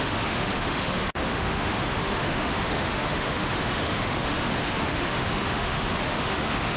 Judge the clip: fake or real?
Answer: fake